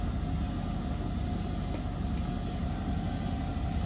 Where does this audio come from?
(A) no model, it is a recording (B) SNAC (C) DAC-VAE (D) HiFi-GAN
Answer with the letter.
A